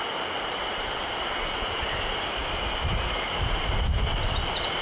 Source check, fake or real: real